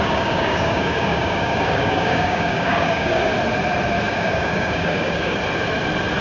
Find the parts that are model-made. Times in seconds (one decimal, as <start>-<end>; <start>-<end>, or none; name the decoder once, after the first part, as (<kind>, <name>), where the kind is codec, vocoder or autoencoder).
0.0-3.3 (codec, DAC); 4.1-5.4

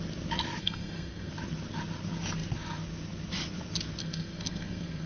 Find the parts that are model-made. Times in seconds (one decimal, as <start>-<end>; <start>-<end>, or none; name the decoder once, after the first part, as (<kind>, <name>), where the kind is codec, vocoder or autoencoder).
0.6-1.3 (codec, SNAC); 4.0-5.1